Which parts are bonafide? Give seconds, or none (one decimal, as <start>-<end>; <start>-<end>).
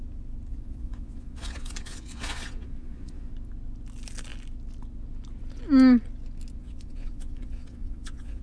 0.0-0.5; 3.3-6.6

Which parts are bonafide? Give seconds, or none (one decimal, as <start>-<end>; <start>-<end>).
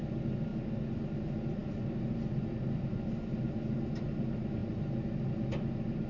0.0-6.1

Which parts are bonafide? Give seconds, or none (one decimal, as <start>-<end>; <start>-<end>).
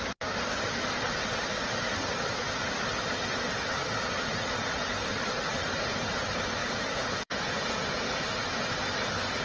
0.0-6.6; 8.0-9.4